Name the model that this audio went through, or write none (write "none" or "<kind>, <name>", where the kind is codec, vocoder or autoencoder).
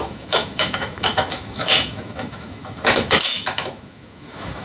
autoencoder, DAC-VAE